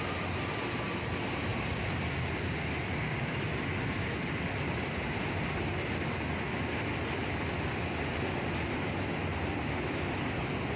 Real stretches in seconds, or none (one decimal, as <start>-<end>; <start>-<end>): 0.0-10.8